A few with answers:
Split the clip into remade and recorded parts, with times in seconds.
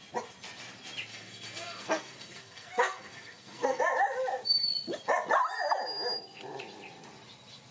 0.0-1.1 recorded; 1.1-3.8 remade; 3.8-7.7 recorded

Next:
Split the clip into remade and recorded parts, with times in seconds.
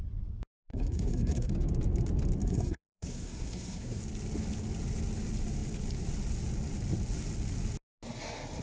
0.0-0.7 recorded; 0.7-1.5 remade; 1.5-2.4 recorded; 2.4-4.0 remade; 4.0-8.6 recorded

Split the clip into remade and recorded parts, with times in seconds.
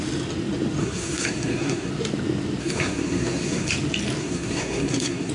0.0-0.8 recorded; 0.8-1.9 remade; 1.9-2.6 recorded; 2.6-3.7 remade; 3.7-4.2 recorded; 4.2-5.3 remade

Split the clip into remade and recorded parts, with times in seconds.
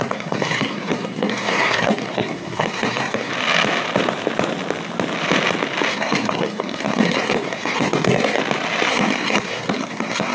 0.0-3.3 remade; 3.3-5.9 recorded; 5.9-8.4 remade; 8.4-8.9 recorded; 8.9-10.3 remade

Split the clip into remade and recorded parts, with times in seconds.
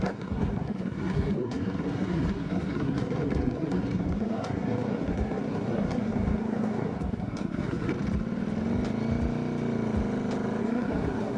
0.0-7.9 remade; 7.9-10.6 recorded; 10.6-11.4 remade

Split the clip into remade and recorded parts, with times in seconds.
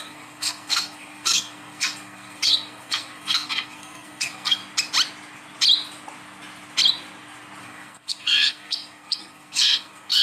0.0-4.6 remade; 4.6-7.6 recorded; 7.6-10.2 remade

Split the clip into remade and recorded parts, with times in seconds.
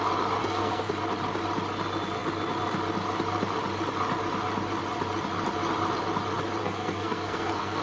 0.0-0.4 recorded; 0.4-0.9 remade; 0.9-6.6 recorded; 6.6-7.8 remade